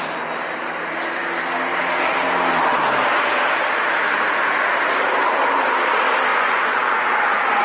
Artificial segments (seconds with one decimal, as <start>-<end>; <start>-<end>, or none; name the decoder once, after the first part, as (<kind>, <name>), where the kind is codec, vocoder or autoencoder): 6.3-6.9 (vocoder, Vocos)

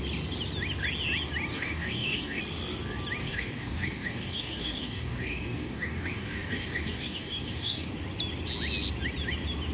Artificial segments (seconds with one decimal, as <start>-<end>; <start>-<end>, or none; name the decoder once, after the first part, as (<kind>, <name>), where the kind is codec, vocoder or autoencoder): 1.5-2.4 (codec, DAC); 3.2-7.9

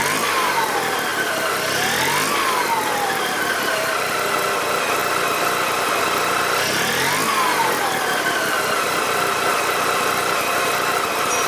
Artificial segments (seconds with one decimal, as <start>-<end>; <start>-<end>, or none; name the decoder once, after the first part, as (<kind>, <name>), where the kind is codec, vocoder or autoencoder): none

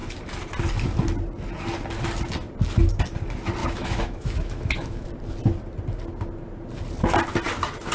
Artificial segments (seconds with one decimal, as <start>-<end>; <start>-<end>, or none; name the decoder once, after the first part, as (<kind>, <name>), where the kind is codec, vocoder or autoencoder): 3.6-5.1 (autoencoder, DAC-VAE)

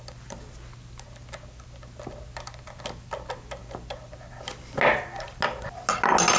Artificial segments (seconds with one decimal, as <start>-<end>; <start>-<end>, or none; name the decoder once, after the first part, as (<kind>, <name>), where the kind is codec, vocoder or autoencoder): none

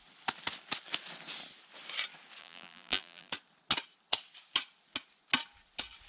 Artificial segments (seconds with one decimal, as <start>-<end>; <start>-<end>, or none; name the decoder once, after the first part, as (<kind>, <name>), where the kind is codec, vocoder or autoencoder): 2.4-3.3 (vocoder, BigVGAN v2)

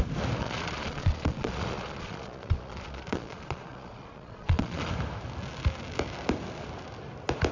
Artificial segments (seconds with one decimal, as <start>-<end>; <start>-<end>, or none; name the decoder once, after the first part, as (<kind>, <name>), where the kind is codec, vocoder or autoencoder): 0.4-4.9 (vocoder, Vocos)